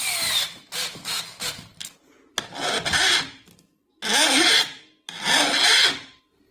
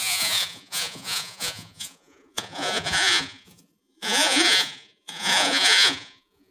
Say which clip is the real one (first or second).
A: first